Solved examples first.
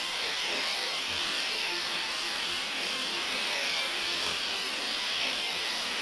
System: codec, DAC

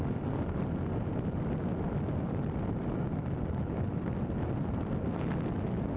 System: none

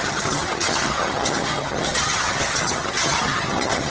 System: vocoder, HiFi-GAN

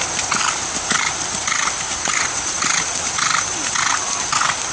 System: none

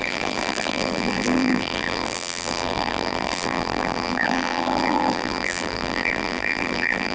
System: vocoder, BigVGAN v2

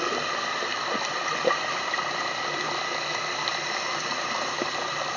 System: none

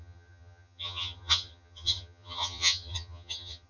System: vocoder, HiFi-GAN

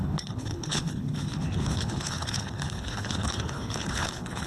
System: codec, HILCodec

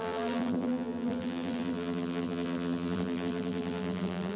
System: vocoder, BigVGAN v2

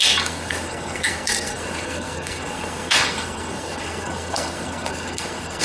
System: codec, SNAC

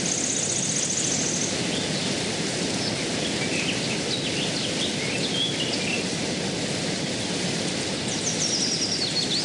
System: none